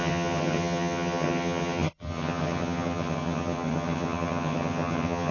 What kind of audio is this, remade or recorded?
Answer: remade